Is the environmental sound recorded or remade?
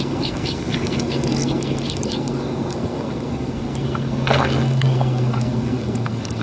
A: remade